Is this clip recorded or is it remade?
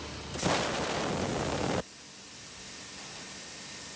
recorded